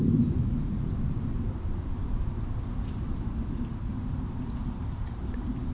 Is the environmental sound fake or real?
fake